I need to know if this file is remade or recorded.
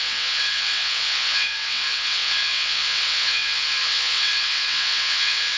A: remade